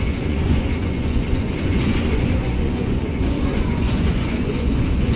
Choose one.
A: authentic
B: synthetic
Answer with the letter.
B